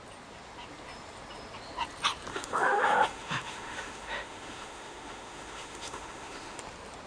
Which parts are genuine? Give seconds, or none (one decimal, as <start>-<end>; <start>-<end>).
0.0-2.3; 6.6-7.1